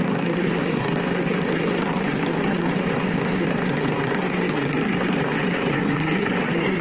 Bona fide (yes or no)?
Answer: no